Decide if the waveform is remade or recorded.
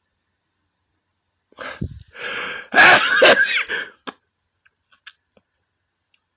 recorded